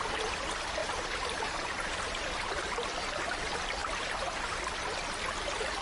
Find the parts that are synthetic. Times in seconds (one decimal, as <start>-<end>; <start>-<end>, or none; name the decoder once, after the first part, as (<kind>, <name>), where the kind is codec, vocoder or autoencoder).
0.8-2.5 (vocoder, BigVGAN v2); 3.8-4.6